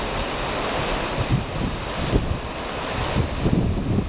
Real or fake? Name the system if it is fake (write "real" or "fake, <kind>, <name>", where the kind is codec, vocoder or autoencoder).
real